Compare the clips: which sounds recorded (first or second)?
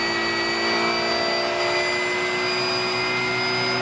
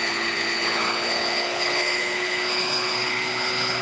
first